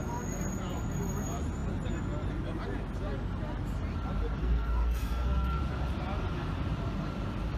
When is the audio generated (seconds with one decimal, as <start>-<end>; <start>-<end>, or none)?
4.4-5.6